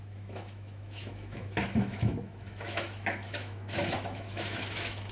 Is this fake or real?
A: fake